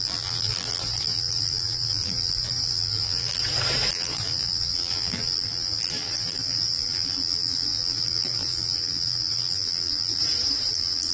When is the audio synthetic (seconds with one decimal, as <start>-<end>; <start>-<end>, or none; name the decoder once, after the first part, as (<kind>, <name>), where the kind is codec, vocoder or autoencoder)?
0.0-3.4 (vocoder, BigVGAN v2); 3.9-10.2; 10.7-11.1